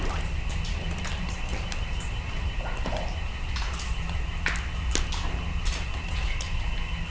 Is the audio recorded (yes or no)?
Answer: yes